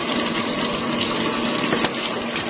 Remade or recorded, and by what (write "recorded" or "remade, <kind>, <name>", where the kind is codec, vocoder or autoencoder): recorded